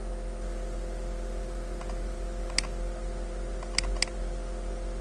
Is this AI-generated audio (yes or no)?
no